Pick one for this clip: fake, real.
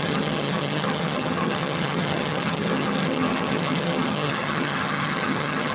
fake